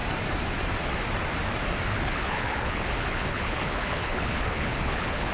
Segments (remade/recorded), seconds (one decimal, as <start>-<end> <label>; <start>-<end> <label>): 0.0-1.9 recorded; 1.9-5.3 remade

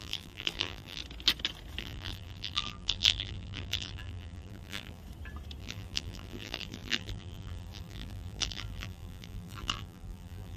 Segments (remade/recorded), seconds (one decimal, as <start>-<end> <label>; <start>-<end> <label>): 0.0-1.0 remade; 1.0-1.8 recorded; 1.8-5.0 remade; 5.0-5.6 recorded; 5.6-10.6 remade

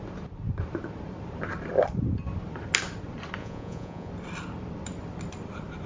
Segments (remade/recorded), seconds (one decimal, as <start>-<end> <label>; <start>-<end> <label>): 0.0-3.4 recorded; 3.4-4.1 remade; 4.1-5.9 recorded

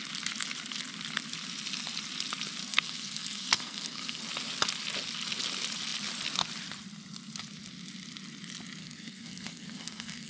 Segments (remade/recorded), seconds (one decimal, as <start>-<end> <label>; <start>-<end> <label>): 0.0-2.6 recorded; 2.6-4.2 remade; 4.2-8.8 recorded; 8.8-10.3 remade

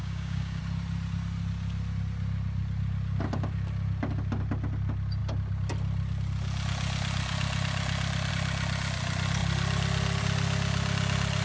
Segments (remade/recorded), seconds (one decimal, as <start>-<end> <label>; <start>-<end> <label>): 0.0-0.6 remade; 0.6-11.4 recorded

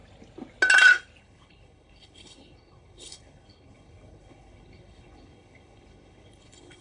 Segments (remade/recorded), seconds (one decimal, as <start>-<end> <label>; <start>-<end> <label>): 0.0-1.2 recorded; 1.2-6.8 remade